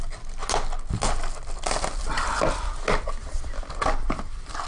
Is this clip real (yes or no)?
yes